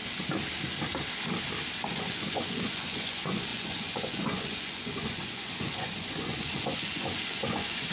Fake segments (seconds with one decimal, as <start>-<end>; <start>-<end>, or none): 1.9-7.9